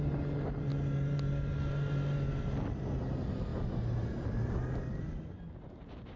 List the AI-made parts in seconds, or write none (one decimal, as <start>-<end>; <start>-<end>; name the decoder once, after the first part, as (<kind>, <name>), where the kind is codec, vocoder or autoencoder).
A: none